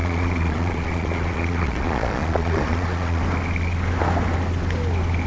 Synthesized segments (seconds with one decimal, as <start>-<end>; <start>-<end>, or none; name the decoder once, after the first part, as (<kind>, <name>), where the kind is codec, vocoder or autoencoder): 0.0-3.2 (vocoder, Vocos)